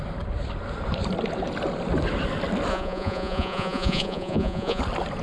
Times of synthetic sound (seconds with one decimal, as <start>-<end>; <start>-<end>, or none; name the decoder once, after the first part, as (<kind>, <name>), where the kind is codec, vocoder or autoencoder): 2.7-4.8 (vocoder, Vocos)